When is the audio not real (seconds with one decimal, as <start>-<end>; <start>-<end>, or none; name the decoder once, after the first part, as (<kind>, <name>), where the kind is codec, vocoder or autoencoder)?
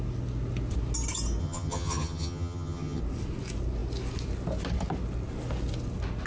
1.4-3.0 (vocoder, HiFi-GAN)